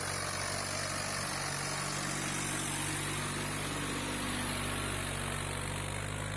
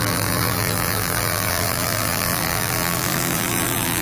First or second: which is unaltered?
first